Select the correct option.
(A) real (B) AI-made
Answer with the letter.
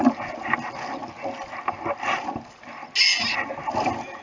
A